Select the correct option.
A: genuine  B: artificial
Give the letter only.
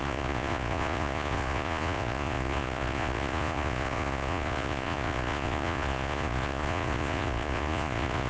B